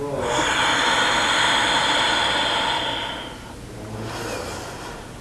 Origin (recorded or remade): recorded